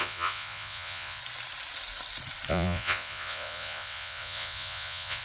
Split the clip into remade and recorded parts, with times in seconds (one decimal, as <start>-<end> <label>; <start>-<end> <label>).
0.0-1.2 remade; 1.2-2.5 recorded; 2.5-5.2 remade